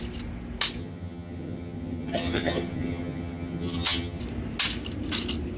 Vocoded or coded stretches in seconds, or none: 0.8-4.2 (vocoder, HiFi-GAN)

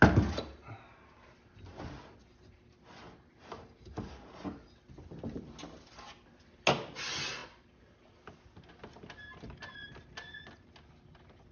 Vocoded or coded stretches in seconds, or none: none

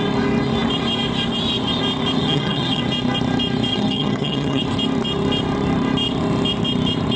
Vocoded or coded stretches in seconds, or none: 2.2-2.8 (vocoder, HiFi-GAN); 3.7-4.6

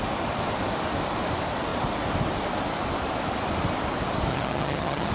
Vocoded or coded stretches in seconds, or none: 4.3-5.1 (vocoder, HiFi-GAN)